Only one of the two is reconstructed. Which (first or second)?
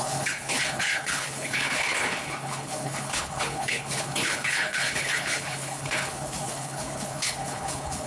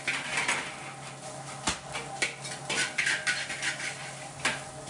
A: first